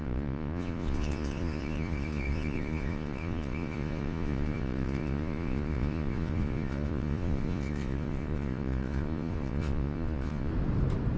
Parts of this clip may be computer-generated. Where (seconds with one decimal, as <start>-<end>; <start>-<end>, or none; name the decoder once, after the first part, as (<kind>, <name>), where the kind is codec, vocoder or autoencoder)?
0.0-10.5 (vocoder, Vocos)